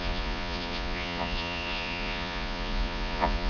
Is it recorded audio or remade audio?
remade